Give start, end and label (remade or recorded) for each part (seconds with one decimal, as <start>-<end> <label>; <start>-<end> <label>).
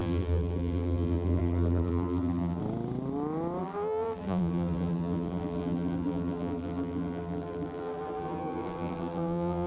0.0-2.6 remade; 2.6-3.6 recorded; 3.6-9.7 remade